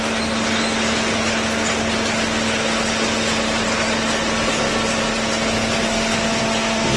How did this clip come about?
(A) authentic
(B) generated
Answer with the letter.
A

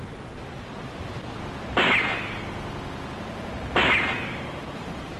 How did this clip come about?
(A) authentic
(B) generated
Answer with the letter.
A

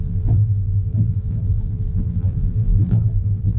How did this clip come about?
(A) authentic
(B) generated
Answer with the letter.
B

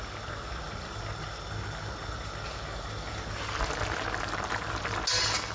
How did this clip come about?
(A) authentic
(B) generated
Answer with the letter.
A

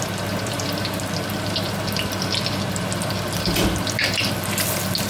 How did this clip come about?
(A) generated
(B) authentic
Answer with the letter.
B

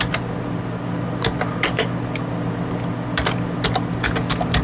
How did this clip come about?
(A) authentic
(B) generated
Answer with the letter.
B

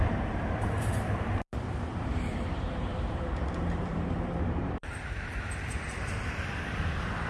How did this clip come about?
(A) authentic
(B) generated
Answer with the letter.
B